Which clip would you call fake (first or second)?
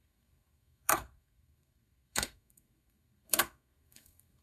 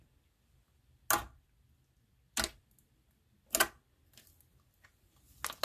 first